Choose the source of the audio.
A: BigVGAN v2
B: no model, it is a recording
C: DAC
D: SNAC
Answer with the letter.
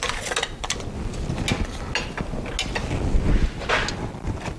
B